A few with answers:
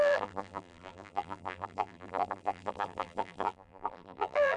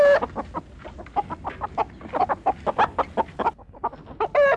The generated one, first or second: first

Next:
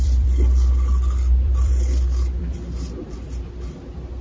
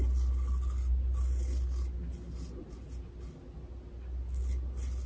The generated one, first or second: first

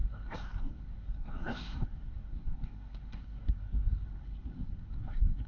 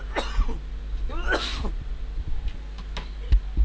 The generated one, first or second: first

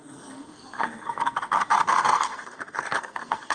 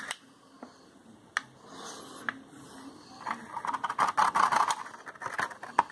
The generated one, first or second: first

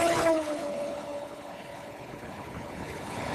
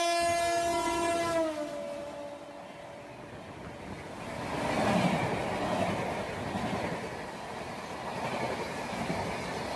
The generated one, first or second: first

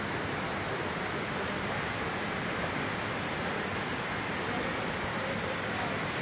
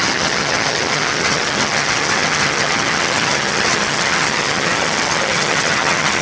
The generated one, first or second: second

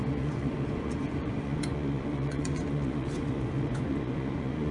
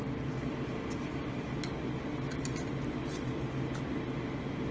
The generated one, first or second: first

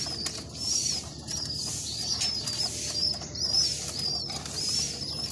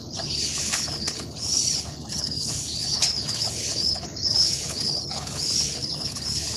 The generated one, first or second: second